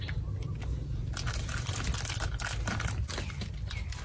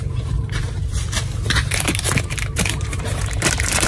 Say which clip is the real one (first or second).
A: first